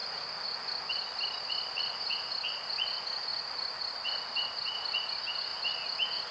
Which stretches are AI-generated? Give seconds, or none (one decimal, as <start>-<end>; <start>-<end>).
none